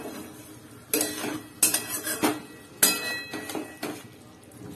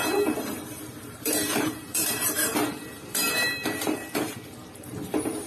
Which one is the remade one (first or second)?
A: second